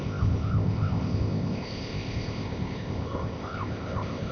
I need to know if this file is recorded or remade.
remade